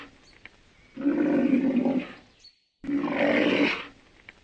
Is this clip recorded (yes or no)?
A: yes